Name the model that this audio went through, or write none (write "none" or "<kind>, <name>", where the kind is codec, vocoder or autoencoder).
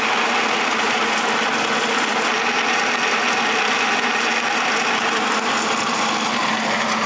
none